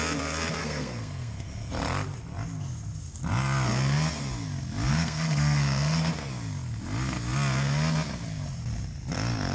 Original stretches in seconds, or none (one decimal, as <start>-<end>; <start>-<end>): 0.0-0.6; 1.7-4.9; 6.1-9.5